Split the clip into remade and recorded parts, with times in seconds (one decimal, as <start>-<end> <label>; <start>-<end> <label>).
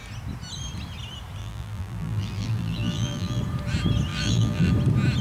0.0-1.4 recorded; 1.4-3.4 remade; 3.4-4.1 recorded; 4.1-4.7 remade; 4.7-5.2 recorded